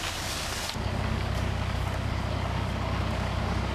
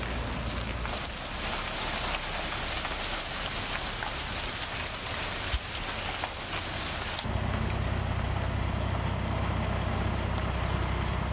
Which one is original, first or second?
second